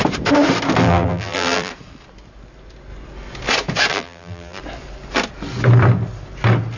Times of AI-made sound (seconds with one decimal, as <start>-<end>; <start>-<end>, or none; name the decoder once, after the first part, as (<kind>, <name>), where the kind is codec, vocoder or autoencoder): 0.8-1.7 (vocoder, BigVGAN v2); 3.9-4.6